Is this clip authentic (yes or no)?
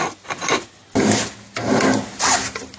yes